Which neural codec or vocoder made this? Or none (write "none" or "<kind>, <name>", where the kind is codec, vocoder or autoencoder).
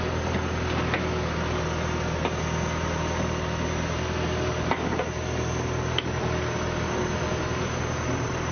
none